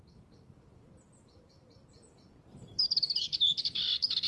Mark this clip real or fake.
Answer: real